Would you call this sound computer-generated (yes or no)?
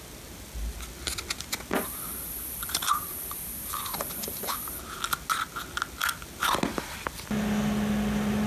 no